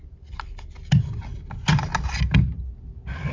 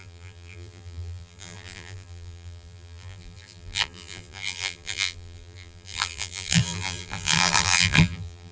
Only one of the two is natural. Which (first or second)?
first